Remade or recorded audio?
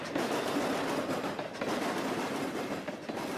recorded